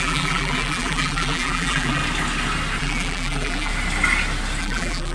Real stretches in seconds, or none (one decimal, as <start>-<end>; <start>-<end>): 2.0-2.8; 3.7-4.6